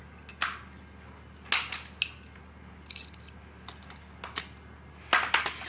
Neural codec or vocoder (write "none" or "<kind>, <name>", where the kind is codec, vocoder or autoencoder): none